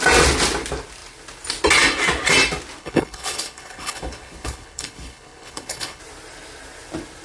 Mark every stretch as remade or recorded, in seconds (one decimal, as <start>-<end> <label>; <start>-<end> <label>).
0.0-2.8 recorded; 2.8-6.0 remade; 6.0-7.2 recorded